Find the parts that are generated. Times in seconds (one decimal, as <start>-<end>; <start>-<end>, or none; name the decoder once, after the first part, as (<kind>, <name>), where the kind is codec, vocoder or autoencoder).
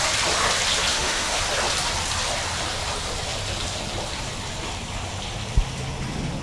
0.9-1.4 (autoencoder, DAC-VAE)